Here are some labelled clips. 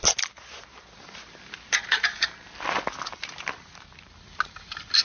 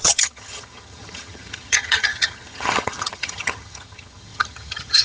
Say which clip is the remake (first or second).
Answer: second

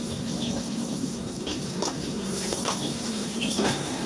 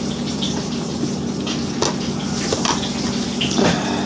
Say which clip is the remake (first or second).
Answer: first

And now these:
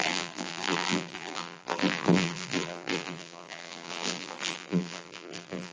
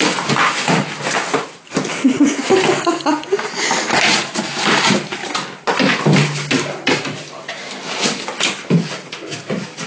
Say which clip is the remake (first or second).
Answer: first